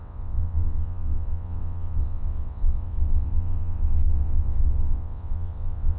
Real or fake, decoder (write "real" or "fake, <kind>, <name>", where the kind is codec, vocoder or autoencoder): fake, vocoder, WaveNeXt